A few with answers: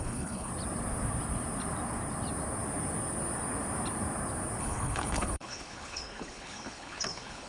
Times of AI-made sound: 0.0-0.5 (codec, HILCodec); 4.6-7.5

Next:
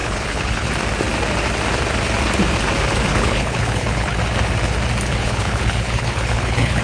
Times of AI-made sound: 0.0-0.7 (codec, HILCodec); 3.1-4.2; 5.1-6.8

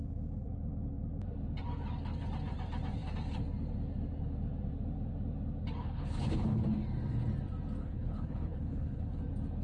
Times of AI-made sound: 5.8-6.6 (codec, HILCodec); 7.8-9.2

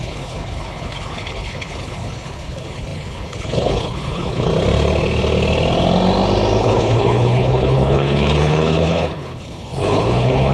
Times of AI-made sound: 0.0-4.5 (codec, HILCodec); 6.6-10.5

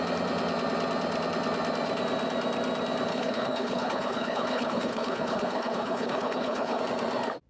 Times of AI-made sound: 3.1-6.8 (codec, HILCodec)